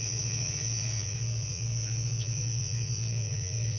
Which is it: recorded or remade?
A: remade